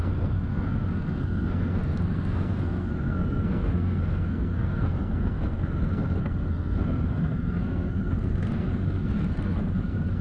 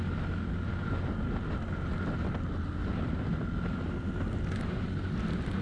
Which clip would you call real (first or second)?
second